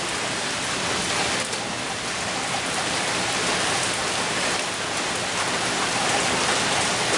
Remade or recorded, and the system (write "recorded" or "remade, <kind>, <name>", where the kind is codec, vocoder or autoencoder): recorded